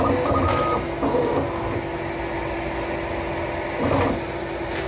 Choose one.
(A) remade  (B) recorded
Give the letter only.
B